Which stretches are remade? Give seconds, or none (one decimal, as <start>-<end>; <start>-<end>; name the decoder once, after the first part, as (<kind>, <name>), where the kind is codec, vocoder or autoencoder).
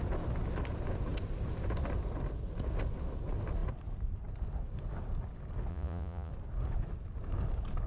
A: 5.7-6.3 (vocoder, Vocos)